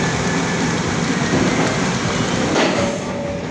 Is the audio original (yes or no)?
yes